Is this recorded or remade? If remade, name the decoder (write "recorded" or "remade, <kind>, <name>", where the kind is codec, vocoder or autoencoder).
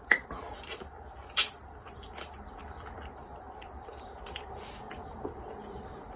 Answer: remade, vocoder, BigVGAN v2